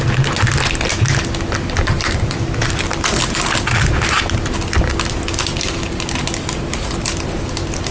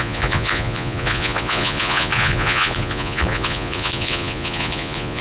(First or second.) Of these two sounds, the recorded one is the first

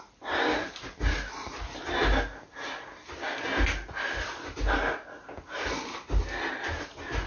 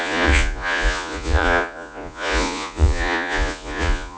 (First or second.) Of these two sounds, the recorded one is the first